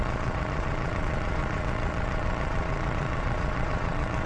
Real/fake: fake